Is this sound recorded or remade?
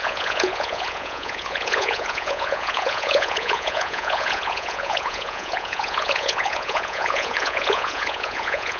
remade